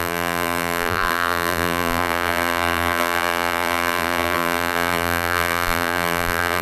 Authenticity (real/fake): fake